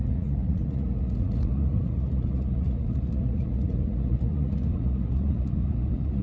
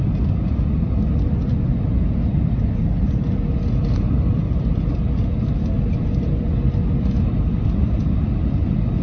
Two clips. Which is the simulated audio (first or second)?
first